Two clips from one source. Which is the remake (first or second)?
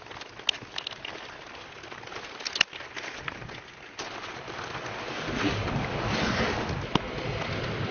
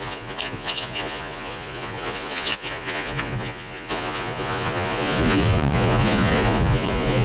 second